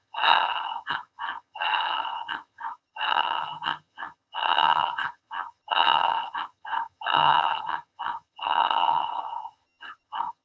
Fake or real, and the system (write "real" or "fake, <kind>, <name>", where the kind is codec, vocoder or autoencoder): fake, vocoder, HiFi-GAN